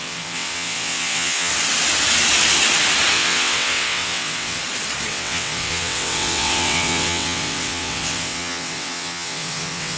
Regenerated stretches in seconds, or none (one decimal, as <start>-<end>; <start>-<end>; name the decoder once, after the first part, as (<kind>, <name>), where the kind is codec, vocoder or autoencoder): 0.0-1.5 (vocoder, WaveNeXt); 3.1-4.6; 5.1-10.0